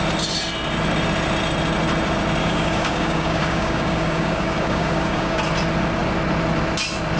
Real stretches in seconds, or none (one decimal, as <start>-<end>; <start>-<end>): 0.0-2.4; 5.4-7.2